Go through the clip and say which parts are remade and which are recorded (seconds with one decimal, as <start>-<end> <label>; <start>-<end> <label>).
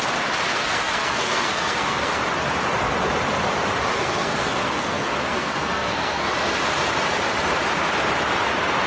0.0-0.5 recorded; 0.5-2.2 remade; 2.2-3.9 recorded; 3.9-6.3 remade; 6.3-8.9 recorded